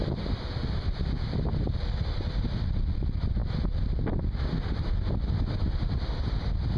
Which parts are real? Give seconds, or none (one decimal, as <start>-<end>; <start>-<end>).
0.0-6.8